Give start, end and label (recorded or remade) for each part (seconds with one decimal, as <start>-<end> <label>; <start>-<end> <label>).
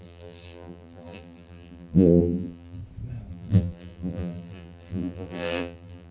0.0-2.8 remade; 2.8-3.3 recorded; 3.3-6.1 remade